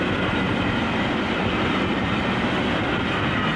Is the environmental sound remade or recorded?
recorded